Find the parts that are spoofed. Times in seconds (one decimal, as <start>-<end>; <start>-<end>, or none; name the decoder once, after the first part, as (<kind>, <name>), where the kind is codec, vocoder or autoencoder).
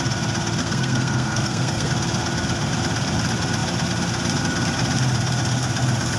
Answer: 0.6-1.9 (codec, SNAC)